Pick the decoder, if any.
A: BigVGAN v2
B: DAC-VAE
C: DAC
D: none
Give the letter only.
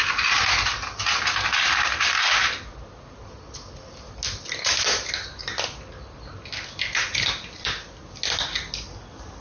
D